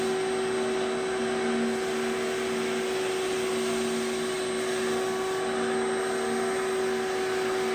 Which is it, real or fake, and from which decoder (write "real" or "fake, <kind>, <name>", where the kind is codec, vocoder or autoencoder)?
real